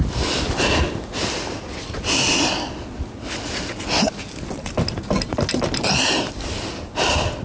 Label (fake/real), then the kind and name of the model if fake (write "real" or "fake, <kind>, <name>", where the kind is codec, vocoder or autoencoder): real